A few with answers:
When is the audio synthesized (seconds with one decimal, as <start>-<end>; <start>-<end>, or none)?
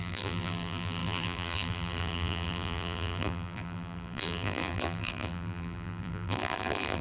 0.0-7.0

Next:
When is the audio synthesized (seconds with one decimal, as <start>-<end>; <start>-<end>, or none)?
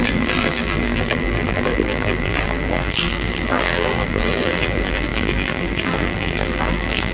0.0-7.1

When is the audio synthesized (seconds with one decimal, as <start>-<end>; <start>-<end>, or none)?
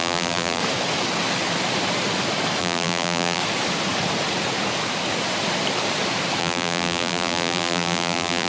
0.0-0.6; 2.6-3.4; 6.4-8.5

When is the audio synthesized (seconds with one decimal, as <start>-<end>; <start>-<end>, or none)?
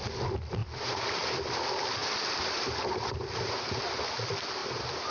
0.6-1.4; 2.0-3.8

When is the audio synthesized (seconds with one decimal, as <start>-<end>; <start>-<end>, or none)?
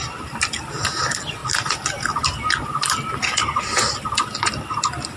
none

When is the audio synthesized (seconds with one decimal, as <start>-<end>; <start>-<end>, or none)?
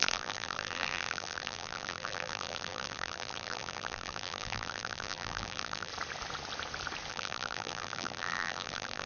0.0-5.9; 7.1-9.1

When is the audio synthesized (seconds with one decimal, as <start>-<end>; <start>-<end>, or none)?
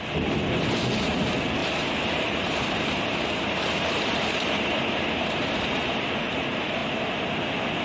1.6-5.5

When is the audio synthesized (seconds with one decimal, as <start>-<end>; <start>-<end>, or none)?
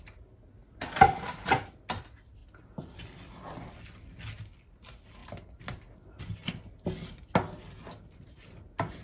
0.6-1.3; 2.4-3.7; 5.2-6.2